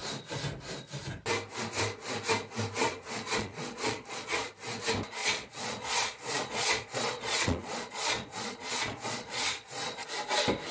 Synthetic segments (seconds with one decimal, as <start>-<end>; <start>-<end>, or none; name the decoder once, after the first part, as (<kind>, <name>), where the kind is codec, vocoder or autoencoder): 2.8-4.5 (vocoder, Vocos); 5.2-10.1